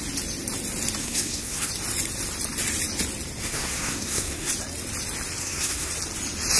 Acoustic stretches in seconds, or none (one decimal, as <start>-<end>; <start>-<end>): 0.0-1.0; 1.7-3.4; 4.5-5.4; 5.9-6.6